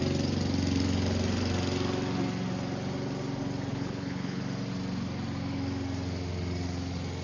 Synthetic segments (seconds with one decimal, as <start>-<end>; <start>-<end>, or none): 3.7-4.4